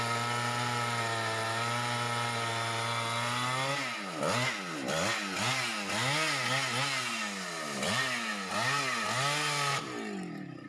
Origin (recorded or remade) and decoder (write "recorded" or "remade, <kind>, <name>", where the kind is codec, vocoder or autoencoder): recorded